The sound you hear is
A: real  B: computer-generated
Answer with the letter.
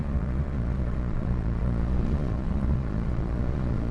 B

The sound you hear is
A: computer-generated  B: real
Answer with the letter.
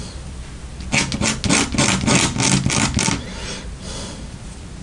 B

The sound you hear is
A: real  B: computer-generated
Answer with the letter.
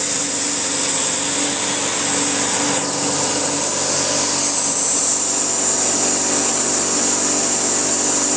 A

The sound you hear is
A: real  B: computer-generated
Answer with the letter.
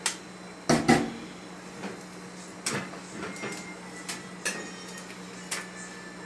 A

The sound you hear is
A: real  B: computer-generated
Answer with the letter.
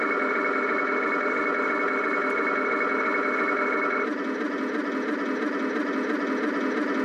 A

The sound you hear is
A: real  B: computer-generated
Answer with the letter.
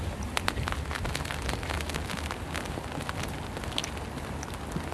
A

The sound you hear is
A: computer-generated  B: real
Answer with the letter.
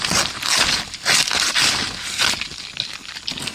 B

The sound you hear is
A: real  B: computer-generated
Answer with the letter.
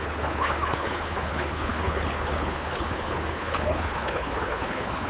B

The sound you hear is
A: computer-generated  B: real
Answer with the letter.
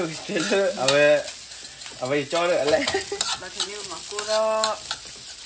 B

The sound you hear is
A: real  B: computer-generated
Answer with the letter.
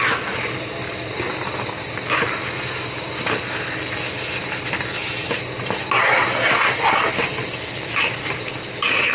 A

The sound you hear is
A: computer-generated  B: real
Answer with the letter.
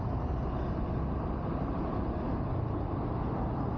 B